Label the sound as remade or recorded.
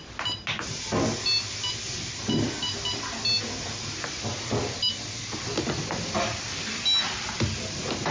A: recorded